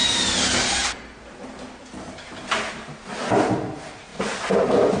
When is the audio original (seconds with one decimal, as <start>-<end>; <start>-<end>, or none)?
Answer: 0.0-5.0